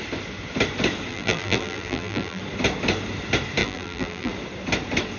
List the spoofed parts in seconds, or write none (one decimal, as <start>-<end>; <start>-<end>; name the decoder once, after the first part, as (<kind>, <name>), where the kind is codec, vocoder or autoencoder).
1.1-2.4 (vocoder, BigVGAN v2); 3.6-4.3